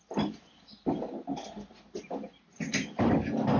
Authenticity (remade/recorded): recorded